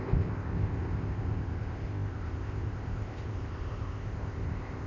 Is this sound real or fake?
fake